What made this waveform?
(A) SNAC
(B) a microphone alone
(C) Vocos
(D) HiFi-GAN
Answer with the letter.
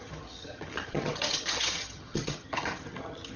D